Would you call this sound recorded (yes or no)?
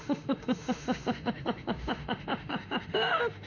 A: no